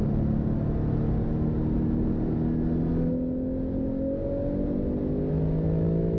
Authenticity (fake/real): real